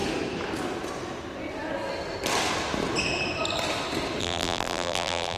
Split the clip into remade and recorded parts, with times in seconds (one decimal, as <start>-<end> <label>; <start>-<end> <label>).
0.0-4.2 recorded; 4.2-5.4 remade